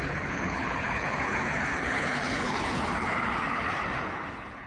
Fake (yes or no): yes